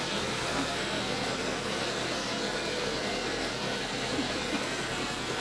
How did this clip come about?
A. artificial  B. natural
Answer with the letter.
A